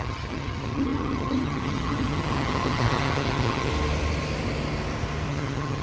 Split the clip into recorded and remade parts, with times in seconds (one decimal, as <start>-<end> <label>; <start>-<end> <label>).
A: 0.0-3.7 remade; 3.7-5.3 recorded; 5.3-5.8 remade